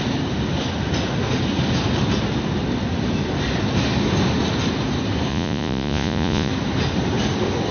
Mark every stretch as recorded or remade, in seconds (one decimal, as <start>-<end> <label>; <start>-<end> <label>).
0.0-5.3 recorded; 5.3-6.5 remade; 6.5-7.7 recorded